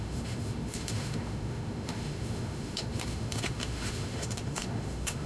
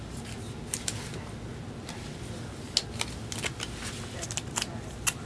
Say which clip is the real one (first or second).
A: second